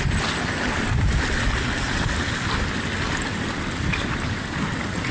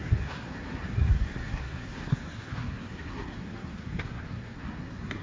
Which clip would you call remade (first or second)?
second